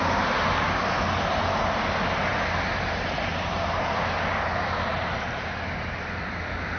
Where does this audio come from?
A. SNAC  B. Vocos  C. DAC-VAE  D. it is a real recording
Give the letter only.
D